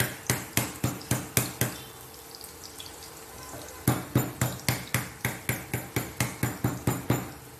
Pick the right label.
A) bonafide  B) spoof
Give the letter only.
A